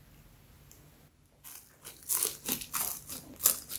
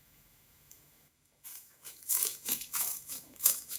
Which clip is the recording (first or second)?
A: first